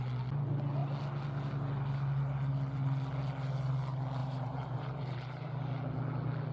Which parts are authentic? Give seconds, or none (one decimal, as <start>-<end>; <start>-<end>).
0.0-4.2; 5.5-6.5